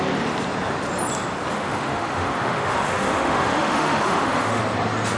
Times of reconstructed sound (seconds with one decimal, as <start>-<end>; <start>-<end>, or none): 1.5-4.6